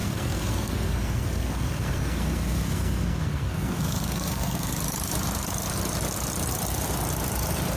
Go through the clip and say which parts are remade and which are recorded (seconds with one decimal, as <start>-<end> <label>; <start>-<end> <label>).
0.0-4.7 remade; 4.7-7.8 recorded